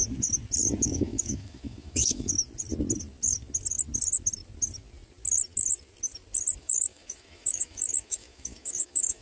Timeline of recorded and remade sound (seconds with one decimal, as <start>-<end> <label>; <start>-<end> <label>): 0.0-0.8 recorded; 0.8-2.3 remade; 2.3-6.6 recorded; 6.6-9.2 remade

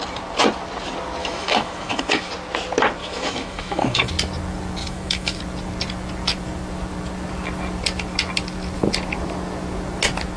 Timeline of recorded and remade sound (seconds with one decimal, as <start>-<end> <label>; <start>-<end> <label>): 0.0-1.2 recorded; 1.2-2.3 remade; 2.3-3.0 recorded; 3.0-4.1 remade; 4.1-4.8 recorded; 4.8-5.4 remade; 5.4-10.4 recorded

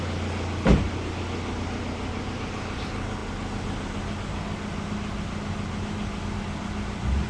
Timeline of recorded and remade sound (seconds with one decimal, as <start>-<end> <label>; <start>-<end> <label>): 0.0-7.3 recorded

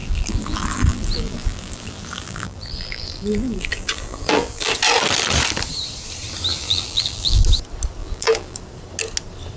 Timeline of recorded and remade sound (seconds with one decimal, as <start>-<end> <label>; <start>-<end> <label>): 0.0-4.7 remade; 4.7-6.5 recorded; 6.5-7.4 remade; 7.4-8.0 recorded; 8.0-8.6 remade; 8.6-9.6 recorded

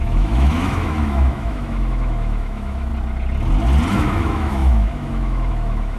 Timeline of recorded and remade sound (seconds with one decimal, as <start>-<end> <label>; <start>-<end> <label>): 0.0-2.9 remade; 2.9-3.9 recorded; 3.9-6.0 remade

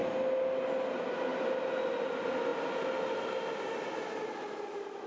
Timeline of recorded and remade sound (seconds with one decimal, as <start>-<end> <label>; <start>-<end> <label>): 0.0-5.1 recorded

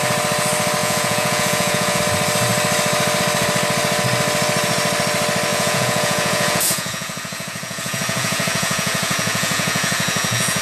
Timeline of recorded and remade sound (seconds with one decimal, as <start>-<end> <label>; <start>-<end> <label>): 0.0-0.8 recorded; 0.8-2.0 remade; 2.0-5.5 recorded; 5.5-10.6 remade

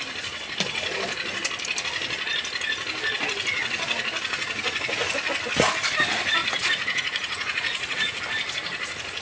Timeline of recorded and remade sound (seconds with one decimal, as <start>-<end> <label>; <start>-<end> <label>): 0.0-6.4 recorded; 6.4-8.2 remade; 8.2-9.2 recorded